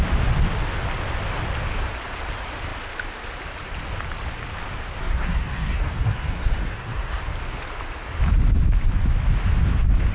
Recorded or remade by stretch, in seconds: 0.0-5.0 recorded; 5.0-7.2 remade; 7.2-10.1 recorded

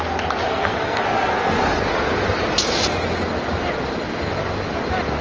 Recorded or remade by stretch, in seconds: 0.0-0.5 recorded; 0.5-1.6 remade; 1.6-5.2 recorded